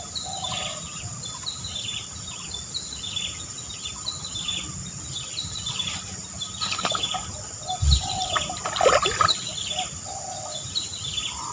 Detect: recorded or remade recorded